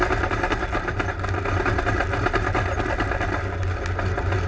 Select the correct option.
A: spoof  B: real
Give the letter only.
B